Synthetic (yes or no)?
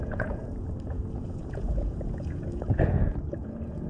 yes